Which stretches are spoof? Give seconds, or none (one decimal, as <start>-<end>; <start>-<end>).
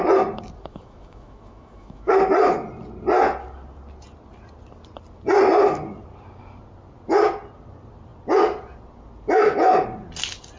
0.7-2.2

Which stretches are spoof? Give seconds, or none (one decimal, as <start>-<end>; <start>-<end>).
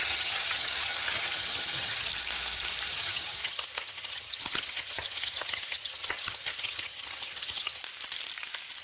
0.0-2.1; 2.9-7.8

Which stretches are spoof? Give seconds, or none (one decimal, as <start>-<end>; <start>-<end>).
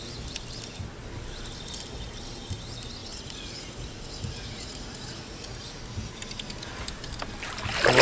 3.0-5.5